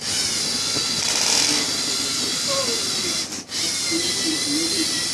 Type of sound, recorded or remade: recorded